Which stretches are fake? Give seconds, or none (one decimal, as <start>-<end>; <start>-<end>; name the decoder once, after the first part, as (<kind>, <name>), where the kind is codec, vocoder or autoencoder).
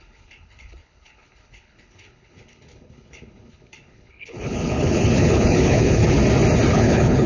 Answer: 0.0-6.2 (codec, HILCodec); 6.7-7.3